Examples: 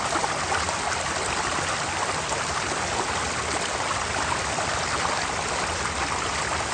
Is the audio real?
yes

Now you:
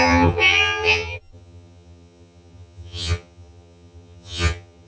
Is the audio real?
no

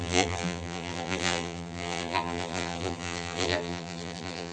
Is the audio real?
no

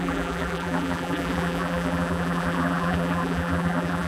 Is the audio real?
no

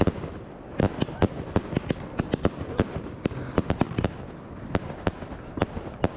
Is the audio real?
yes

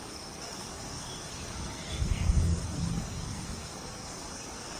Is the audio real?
no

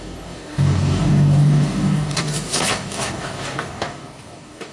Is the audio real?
no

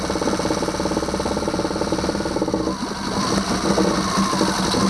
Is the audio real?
yes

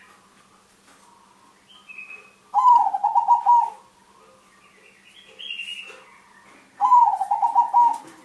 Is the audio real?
yes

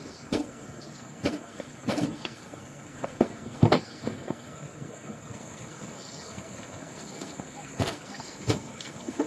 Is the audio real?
no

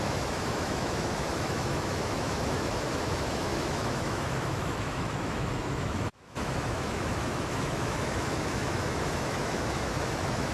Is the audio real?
no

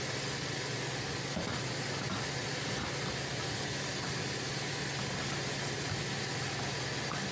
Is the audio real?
yes